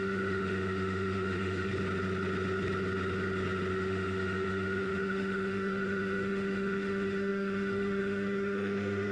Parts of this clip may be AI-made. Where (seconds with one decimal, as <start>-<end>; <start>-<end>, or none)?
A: 0.0-1.7; 3.7-9.1